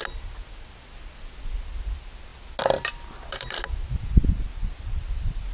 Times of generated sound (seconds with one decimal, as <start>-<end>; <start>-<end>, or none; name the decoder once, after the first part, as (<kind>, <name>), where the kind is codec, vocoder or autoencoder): none